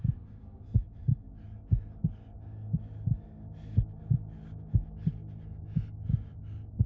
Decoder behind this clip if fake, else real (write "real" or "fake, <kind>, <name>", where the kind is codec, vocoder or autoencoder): real